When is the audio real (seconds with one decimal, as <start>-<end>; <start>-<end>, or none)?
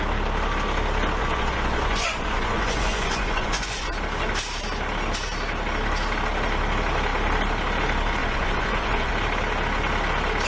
0.0-1.2; 3.9-8.2; 9.1-10.5